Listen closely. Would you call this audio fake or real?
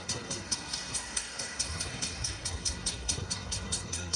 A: fake